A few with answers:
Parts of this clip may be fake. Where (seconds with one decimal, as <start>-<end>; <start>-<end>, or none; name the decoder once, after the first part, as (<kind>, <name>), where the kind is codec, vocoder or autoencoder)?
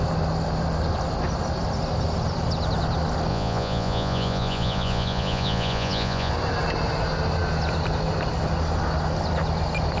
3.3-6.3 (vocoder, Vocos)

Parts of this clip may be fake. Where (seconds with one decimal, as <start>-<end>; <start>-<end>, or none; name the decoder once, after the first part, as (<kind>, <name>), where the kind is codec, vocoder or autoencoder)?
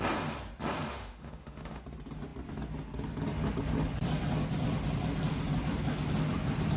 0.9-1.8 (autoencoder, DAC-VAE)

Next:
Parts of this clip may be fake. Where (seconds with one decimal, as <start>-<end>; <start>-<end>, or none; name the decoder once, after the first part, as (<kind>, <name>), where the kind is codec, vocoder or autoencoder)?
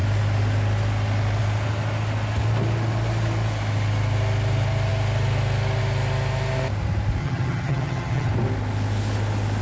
7.2-8.3 (vocoder, HiFi-GAN)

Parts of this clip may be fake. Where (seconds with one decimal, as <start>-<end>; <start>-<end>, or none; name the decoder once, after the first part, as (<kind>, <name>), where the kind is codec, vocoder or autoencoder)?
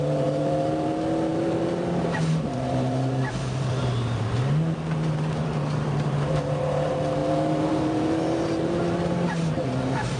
0.0-10.2 (vocoder, BigVGAN v2)